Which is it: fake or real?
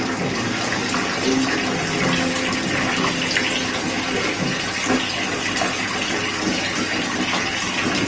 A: real